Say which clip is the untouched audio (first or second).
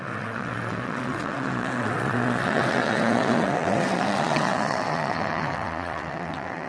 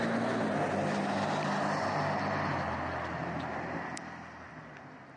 second